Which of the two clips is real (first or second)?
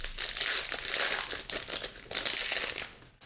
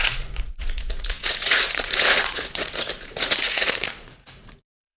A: first